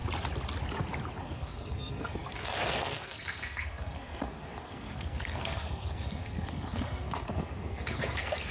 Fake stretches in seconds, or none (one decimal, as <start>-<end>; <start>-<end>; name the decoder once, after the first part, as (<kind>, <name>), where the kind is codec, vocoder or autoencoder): 1.2-8.5 (codec, SNAC)